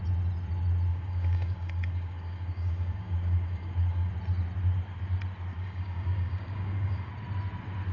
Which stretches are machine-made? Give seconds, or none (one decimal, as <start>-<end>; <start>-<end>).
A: 0.9-4.1; 5.5-7.1